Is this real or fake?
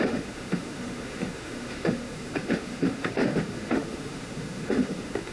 fake